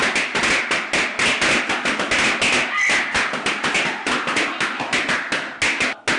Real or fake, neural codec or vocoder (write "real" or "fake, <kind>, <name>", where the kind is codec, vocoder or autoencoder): real